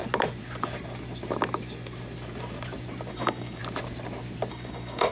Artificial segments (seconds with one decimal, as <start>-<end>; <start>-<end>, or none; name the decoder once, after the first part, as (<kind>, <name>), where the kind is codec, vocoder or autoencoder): 3.1-3.6 (codec, DAC); 4.5-5.1